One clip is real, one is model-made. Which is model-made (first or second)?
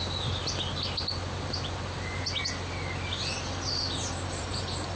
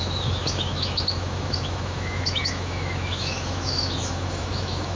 second